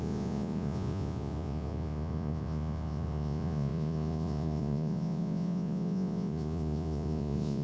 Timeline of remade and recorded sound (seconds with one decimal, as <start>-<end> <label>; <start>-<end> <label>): 0.0-7.6 remade